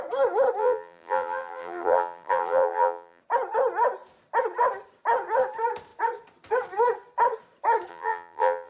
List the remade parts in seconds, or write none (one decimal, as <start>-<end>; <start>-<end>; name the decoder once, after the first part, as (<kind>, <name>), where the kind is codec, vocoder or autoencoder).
0.6-3.2 (vocoder, BigVGAN v2); 7.9-8.7